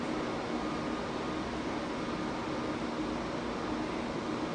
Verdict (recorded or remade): recorded